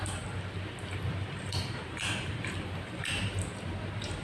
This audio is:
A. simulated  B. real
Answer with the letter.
A